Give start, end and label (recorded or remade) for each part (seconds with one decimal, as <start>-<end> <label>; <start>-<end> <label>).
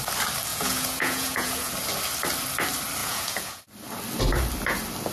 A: 0.0-0.5 recorded; 0.5-1.7 remade; 1.7-3.0 recorded; 3.0-3.6 remade; 3.6-5.1 recorded